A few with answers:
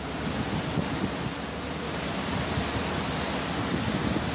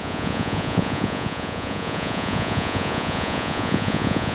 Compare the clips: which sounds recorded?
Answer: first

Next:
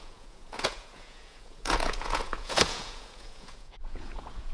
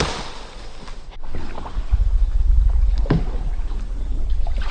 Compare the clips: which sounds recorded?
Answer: second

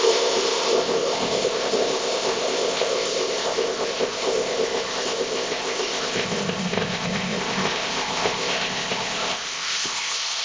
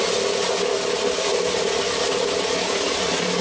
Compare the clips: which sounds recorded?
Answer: second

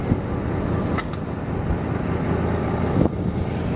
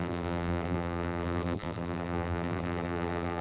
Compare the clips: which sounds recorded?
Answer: first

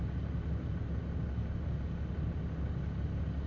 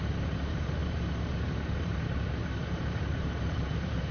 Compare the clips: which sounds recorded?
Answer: first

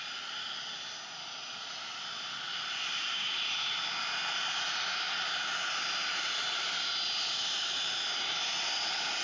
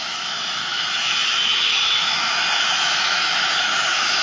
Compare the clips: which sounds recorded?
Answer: first